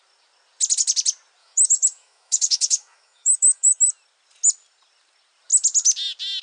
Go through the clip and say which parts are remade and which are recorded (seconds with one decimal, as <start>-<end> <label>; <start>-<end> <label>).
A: 0.0-1.4 recorded; 1.4-3.8 remade; 3.8-6.4 recorded